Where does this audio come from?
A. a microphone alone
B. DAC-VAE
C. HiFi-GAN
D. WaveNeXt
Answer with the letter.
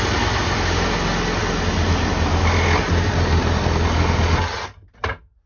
A